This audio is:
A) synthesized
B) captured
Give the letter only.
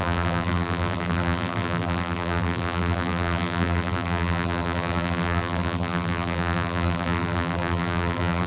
A